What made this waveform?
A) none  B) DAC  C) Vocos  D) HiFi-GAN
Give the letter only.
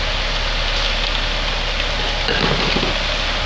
A